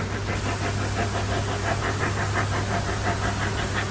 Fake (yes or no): no